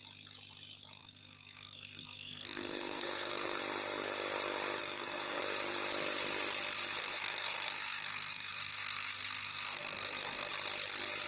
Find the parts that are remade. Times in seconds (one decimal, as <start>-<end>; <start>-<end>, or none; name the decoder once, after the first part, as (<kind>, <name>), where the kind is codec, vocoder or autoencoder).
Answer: 1.0-3.6 (codec, SNAC); 4.8-5.4; 7.0-10.5